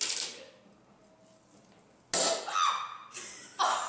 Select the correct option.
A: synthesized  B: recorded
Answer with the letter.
B